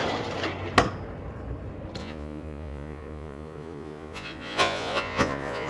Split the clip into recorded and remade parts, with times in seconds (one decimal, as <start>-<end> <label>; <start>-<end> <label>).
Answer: 0.0-2.0 recorded; 2.0-5.7 remade